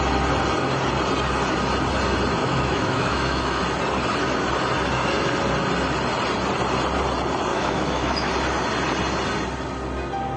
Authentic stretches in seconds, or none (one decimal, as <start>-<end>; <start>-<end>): 0.0-2.4; 3.6-7.5; 8.3-10.4

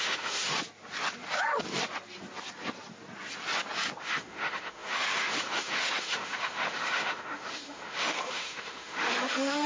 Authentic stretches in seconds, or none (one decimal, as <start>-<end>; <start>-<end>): 0.5-4.0